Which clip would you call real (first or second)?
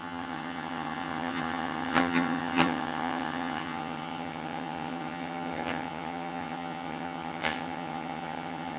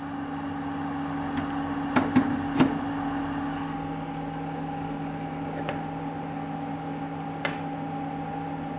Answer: second